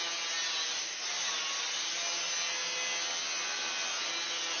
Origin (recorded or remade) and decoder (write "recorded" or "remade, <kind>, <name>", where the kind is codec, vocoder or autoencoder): recorded